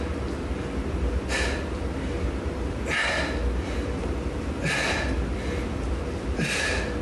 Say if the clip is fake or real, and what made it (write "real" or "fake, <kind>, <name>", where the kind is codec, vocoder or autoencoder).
fake, vocoder, BigVGAN v2